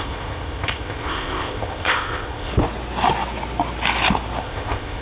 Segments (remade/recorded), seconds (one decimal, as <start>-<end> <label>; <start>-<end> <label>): 0.0-2.5 remade; 2.5-4.4 recorded; 4.4-5.0 remade